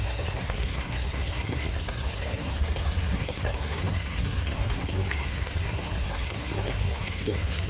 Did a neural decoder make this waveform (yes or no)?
yes